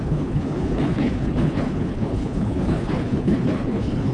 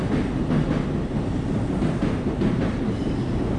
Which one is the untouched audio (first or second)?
second